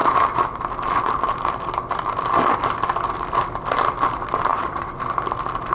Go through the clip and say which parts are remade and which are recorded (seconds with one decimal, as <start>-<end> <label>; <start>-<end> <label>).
0.0-4.5 recorded; 4.5-5.0 remade; 5.0-5.7 recorded